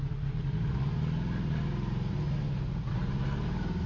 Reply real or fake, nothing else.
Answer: real